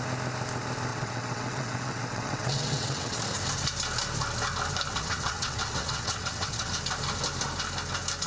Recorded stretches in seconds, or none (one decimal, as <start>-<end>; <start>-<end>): 0.0-0.9; 3.2-4.9; 6.7-8.3